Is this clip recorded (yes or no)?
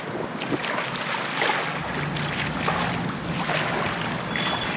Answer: yes